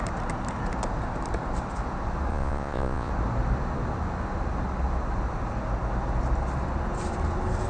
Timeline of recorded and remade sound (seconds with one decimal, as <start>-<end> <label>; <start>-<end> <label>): 0.0-2.3 recorded; 2.3-3.1 remade; 3.1-7.7 recorded

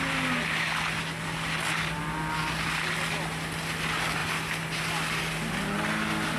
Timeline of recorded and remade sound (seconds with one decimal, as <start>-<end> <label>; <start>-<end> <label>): 0.0-6.4 recorded